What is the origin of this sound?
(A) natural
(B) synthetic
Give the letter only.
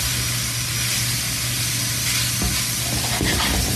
A